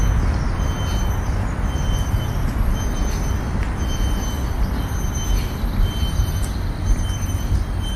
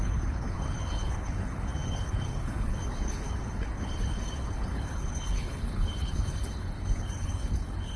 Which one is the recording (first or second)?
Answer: first